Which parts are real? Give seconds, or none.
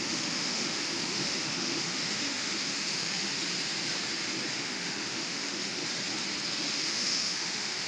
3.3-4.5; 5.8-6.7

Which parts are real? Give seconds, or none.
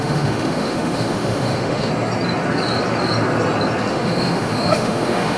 1.9-3.9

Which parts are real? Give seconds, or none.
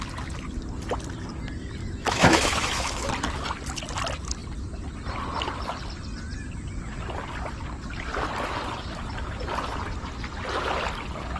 0.0-1.8; 3.1-11.4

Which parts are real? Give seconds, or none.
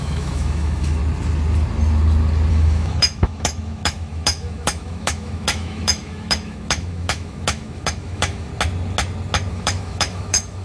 1.0-2.5; 8.5-9.5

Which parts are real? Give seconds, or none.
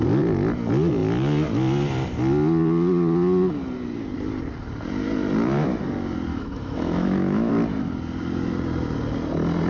0.0-6.3; 7.5-9.7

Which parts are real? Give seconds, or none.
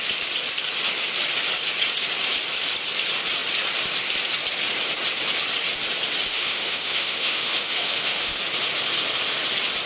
0.0-6.3; 8.4-9.9